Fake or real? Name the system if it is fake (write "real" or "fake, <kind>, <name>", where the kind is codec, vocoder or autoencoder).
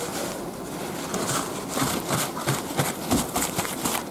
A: fake, vocoder, BigVGAN v2